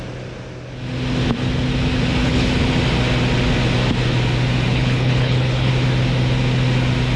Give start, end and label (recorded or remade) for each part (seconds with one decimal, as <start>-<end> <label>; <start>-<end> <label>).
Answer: 0.0-2.2 recorded; 2.2-2.7 remade; 2.7-4.7 recorded; 4.7-5.7 remade; 5.7-7.2 recorded